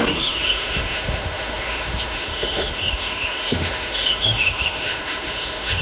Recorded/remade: remade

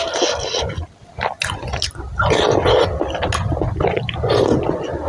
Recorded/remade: recorded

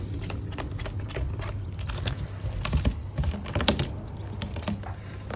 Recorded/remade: recorded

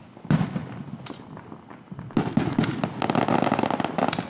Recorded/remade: recorded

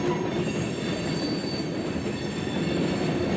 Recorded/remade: recorded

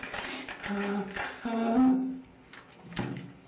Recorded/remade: recorded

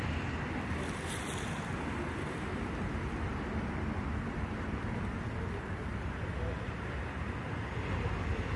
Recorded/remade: recorded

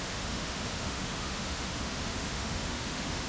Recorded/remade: remade